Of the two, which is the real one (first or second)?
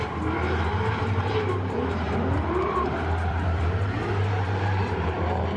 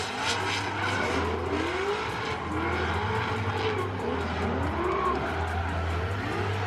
second